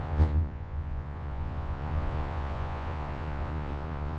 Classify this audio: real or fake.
fake